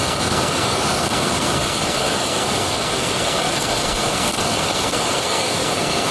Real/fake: fake